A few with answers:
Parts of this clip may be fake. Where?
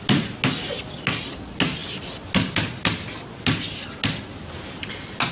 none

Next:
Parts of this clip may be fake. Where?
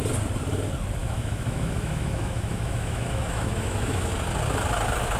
1.0-4.1 (autoencoder, DAC-VAE)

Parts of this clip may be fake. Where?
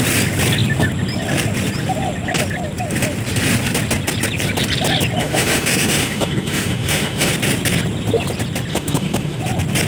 5.2-7.3 (autoencoder, DAC-VAE); 8.7-9.4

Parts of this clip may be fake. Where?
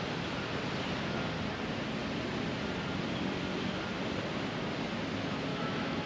5.5-6.1 (autoencoder, DAC-VAE)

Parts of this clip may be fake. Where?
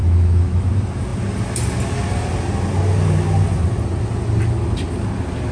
0.0-0.7 (autoencoder, DAC-VAE)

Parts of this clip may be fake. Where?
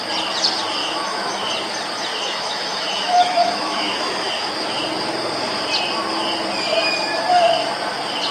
0.8-1.5 (autoencoder, DAC-VAE); 2.1-4.5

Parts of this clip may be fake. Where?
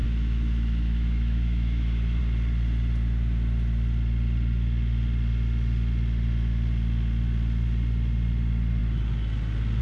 0.0-2.2 (autoencoder, DAC-VAE)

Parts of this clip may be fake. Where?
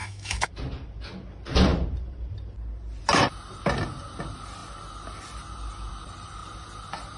0.0-0.5 (autoencoder, DAC-VAE)